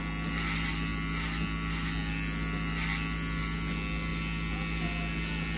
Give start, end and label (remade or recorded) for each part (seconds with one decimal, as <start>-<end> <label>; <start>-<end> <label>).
0.0-5.6 recorded